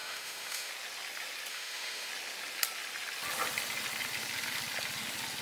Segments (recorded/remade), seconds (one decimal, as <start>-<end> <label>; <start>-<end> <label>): 0.0-0.7 remade; 0.7-1.5 recorded; 1.5-2.1 remade; 2.1-5.4 recorded